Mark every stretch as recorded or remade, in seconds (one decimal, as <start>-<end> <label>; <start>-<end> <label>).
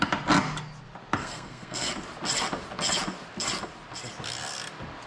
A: 0.0-1.2 recorded; 1.2-1.9 remade; 1.9-5.1 recorded